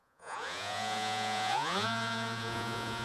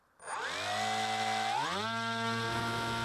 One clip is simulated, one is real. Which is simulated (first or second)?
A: first